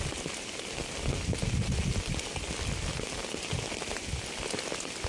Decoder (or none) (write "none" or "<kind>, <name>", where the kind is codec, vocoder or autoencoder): none